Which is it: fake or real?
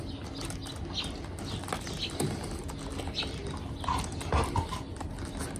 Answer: real